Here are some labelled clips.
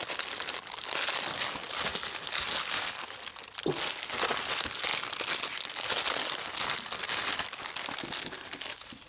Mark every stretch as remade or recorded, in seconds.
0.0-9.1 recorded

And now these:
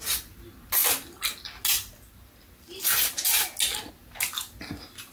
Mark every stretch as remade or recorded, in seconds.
0.0-5.1 recorded

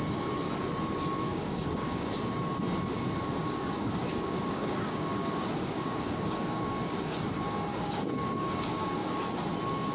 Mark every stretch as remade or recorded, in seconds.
0.0-1.3 recorded; 1.3-2.1 remade; 2.1-3.4 recorded; 3.4-7.2 remade; 7.2-7.7 recorded; 7.7-9.2 remade; 9.2-9.9 recorded

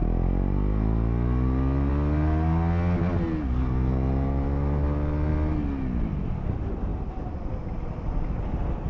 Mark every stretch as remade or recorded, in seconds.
0.0-8.9 recorded

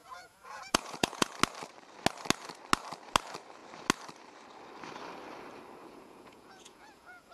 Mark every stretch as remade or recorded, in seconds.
0.0-1.3 remade; 1.3-5.8 recorded; 5.8-7.3 remade

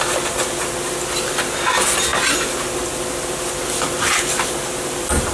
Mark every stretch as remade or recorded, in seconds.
0.0-5.3 recorded

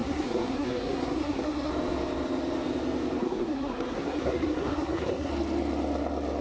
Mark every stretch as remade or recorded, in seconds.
0.0-1.7 remade; 1.7-3.2 recorded; 3.2-5.3 remade; 5.3-6.4 recorded

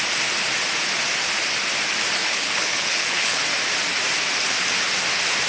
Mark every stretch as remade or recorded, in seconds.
0.0-2.2 recorded; 2.2-3.4 remade; 3.4-5.5 recorded